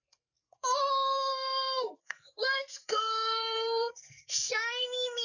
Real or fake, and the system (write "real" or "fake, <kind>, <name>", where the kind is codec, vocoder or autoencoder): fake, codec, SNAC